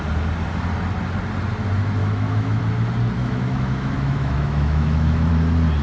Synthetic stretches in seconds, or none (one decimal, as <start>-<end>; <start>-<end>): 2.0-2.6; 3.2-5.3